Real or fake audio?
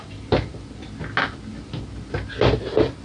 real